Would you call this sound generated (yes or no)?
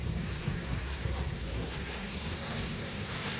yes